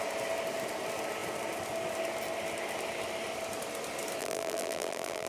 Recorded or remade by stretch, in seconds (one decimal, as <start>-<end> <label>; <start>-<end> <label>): 0.0-4.2 recorded; 4.2-5.3 remade